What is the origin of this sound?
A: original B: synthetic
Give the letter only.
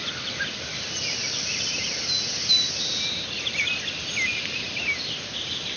A